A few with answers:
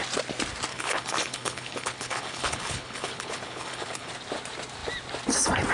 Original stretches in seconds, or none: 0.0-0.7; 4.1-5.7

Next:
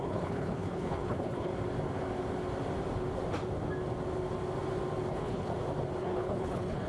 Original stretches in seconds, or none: 1.5-5.1; 5.5-6.0

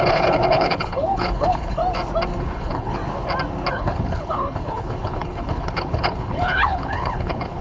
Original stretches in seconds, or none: 1.8-2.4; 3.0-3.7

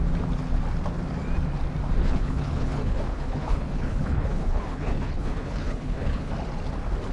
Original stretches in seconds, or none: 0.0-2.0; 6.3-7.1